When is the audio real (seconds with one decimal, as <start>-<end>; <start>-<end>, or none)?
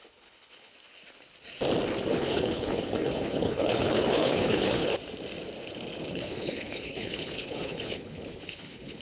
0.7-2.1; 5.0-6.1